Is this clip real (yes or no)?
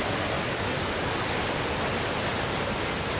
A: yes